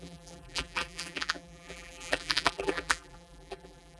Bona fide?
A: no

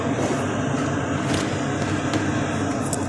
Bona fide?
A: yes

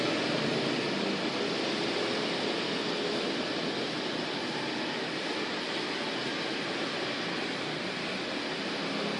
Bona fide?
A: yes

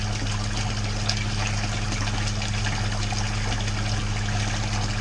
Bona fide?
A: yes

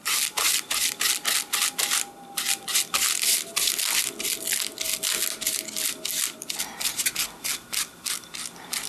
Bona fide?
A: yes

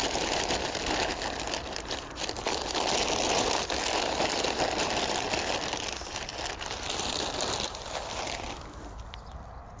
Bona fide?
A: yes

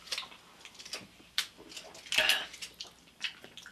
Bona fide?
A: yes